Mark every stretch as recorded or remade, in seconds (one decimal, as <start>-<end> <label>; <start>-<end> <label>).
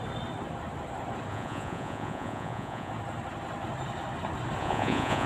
0.0-1.3 recorded; 1.3-2.9 remade; 2.9-4.6 recorded; 4.6-5.3 remade